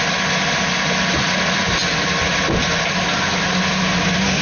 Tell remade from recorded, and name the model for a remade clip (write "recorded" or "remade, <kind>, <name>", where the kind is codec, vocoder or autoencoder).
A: recorded